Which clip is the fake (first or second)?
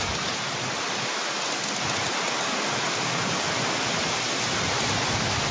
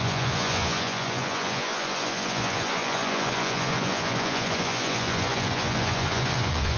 second